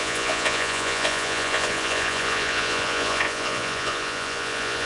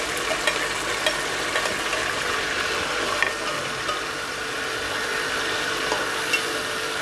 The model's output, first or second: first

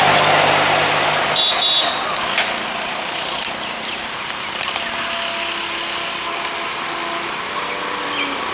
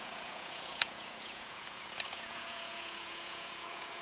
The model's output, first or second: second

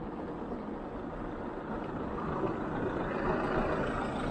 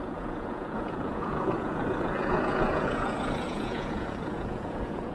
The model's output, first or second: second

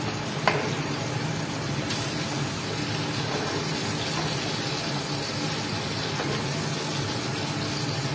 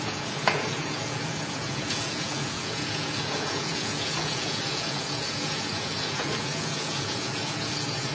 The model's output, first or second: second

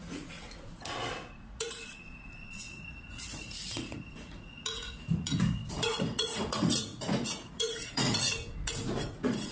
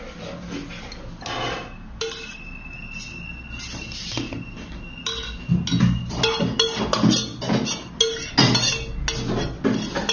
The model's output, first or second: first